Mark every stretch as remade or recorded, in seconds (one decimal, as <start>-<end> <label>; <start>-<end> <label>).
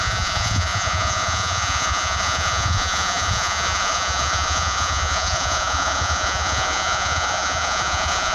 0.0-8.3 remade